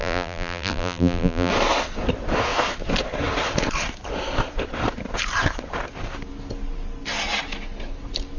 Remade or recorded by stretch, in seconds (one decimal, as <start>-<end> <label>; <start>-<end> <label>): 0.0-1.5 remade; 1.5-8.4 recorded